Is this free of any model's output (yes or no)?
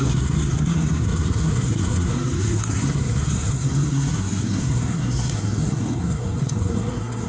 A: no